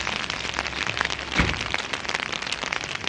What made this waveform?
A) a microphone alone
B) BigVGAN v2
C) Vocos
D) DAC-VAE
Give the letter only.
B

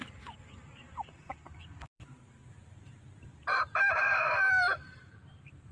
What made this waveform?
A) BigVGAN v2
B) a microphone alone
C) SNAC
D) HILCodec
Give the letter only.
A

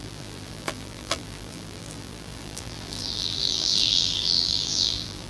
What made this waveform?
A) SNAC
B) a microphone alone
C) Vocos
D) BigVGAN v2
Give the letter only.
D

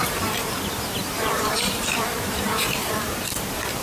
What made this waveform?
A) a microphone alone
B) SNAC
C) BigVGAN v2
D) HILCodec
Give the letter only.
C